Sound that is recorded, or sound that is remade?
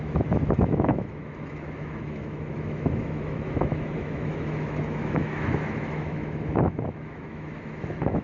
remade